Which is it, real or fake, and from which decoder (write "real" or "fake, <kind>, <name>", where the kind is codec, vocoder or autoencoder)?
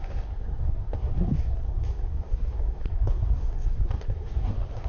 fake, codec, SNAC